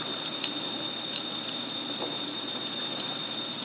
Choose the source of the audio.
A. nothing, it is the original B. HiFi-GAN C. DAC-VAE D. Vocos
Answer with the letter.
A